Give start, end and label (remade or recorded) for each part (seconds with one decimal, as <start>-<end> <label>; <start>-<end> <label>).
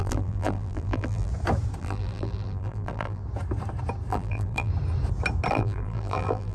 0.0-1.3 remade; 1.3-1.8 recorded; 1.8-3.2 remade; 3.2-4.1 recorded; 4.1-4.7 remade; 4.7-5.5 recorded; 5.5-6.5 remade